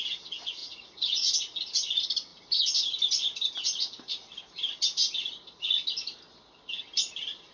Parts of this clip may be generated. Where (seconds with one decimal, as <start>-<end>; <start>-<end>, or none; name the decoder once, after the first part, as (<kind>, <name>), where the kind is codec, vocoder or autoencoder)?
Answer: 0.6-1.6 (vocoder, Vocos)